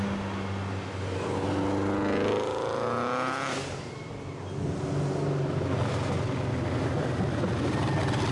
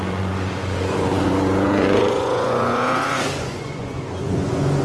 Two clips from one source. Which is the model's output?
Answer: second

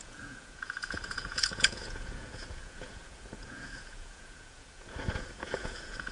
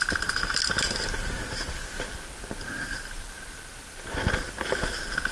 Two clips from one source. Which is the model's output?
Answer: first